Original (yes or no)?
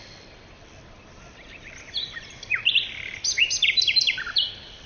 no